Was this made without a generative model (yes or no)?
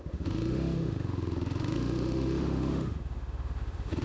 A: no